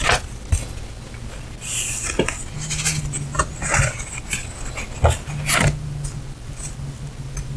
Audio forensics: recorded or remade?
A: recorded